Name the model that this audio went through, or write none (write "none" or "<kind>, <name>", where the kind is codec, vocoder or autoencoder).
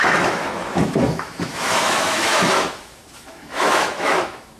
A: autoencoder, DAC-VAE